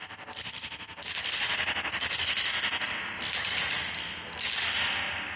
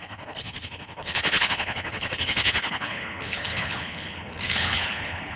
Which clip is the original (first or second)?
first